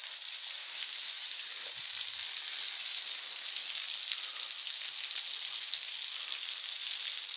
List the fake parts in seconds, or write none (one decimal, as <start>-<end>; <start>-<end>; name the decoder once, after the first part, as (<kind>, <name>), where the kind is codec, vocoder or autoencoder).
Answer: 0.6-1.2 (autoencoder, DAC-VAE)